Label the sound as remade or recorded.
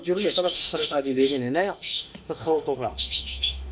remade